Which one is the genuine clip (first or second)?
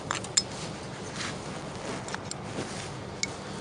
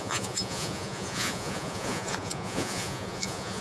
first